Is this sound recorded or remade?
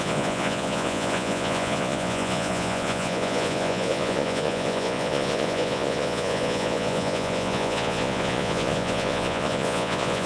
remade